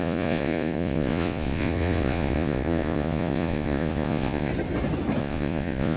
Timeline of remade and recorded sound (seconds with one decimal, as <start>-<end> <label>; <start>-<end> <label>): 0.0-4.5 remade; 4.5-5.2 recorded; 5.2-6.0 remade